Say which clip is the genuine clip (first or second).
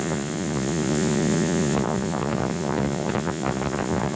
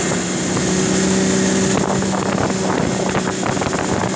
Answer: second